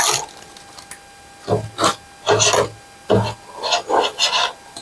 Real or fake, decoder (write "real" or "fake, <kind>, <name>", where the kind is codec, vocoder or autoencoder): real